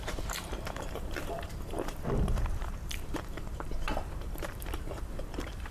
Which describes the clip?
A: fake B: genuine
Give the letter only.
A